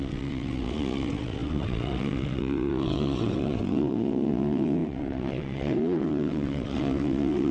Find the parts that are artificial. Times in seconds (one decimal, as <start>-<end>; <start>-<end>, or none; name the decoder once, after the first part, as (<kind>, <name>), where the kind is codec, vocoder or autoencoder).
0.0-7.5 (vocoder, WaveNeXt)